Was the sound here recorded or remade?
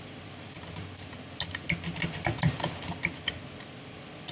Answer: recorded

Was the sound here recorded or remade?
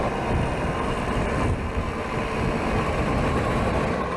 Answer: recorded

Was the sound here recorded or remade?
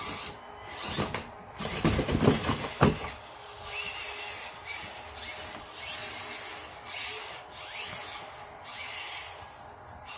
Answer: recorded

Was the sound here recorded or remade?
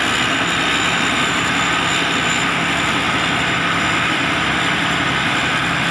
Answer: recorded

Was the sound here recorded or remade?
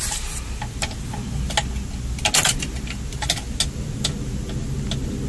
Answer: recorded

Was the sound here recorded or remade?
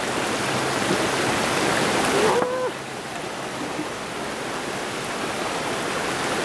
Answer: recorded